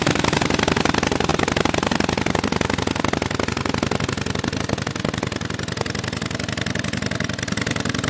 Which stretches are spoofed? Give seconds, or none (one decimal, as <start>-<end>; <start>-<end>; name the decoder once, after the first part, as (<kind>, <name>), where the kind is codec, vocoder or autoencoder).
none